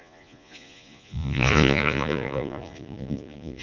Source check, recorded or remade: remade